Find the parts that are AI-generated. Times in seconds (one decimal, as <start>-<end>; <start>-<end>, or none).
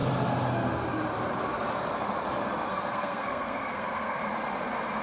2.7-4.2